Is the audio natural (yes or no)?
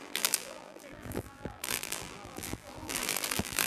no